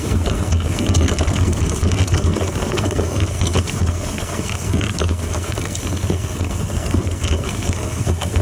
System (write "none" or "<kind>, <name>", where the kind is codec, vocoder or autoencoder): codec, SNAC